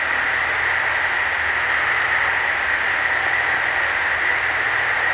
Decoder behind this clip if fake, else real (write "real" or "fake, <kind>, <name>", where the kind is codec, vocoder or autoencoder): real